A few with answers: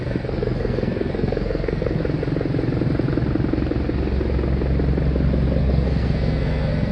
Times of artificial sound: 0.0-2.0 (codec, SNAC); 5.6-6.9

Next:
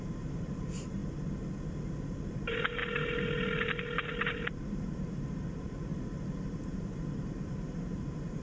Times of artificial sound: 0.0-1.0 (vocoder, BigVGAN v2); 2.2-2.8; 4.1-5.9; 7.2-8.4

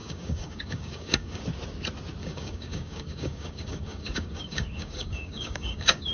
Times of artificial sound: 0.0-1.4 (codec, DAC); 2.2-6.1

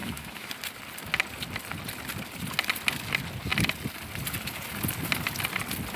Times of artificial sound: 0.0-0.5 (autoencoder, DAC-VAE)

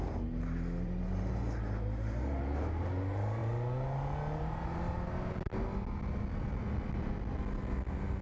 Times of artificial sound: none